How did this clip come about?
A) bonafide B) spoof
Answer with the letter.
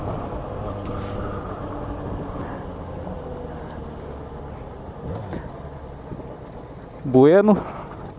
A